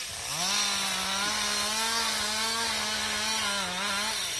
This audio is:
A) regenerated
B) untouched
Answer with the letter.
B